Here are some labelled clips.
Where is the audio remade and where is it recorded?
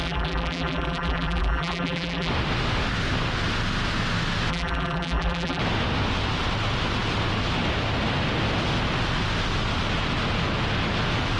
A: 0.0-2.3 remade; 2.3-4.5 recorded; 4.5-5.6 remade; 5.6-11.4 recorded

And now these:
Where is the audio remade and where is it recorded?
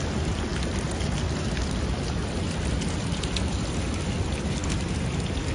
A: 0.0-4.6 remade; 4.6-5.5 recorded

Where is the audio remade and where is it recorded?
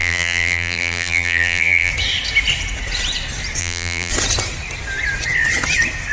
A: 0.0-1.9 remade; 1.9-3.6 recorded; 3.6-4.1 remade; 4.1-6.1 recorded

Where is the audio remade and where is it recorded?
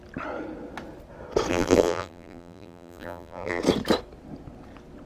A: 0.0-1.5 recorded; 1.5-3.6 remade; 3.6-5.1 recorded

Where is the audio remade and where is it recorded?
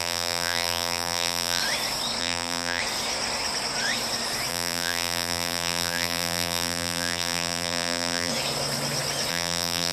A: 0.0-1.6 remade; 1.6-2.2 recorded; 2.2-2.8 remade; 2.8-4.5 recorded; 4.5-8.3 remade; 8.3-9.3 recorded; 9.3-9.9 remade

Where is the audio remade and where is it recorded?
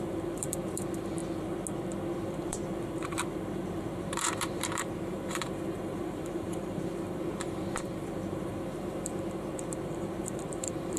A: 0.0-1.2 remade; 1.2-2.2 recorded; 2.2-11.0 remade